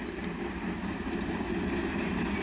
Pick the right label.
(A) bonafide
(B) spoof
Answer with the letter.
A